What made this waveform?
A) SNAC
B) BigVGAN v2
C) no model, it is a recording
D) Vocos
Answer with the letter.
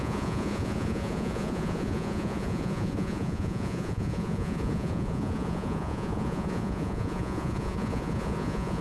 D